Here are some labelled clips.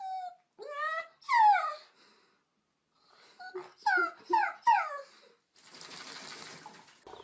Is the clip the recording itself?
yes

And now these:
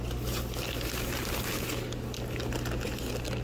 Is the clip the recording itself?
yes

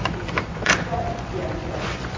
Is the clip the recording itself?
no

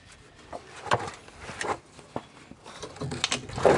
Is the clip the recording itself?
yes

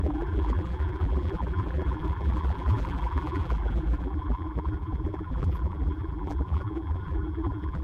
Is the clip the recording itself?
no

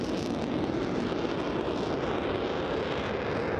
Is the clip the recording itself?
yes